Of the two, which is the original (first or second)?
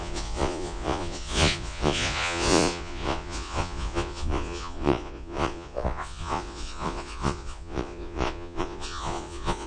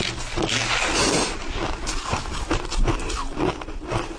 second